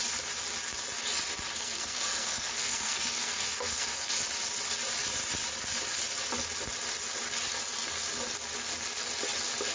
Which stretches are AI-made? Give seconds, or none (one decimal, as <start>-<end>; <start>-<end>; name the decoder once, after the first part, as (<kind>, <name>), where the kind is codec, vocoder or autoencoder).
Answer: 1.6-4.1 (codec, SNAC)

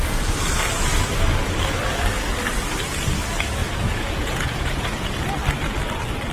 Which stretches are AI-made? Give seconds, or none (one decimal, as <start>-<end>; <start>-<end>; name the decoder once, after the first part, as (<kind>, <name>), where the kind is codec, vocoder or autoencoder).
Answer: 3.6-5.1 (vocoder, Vocos)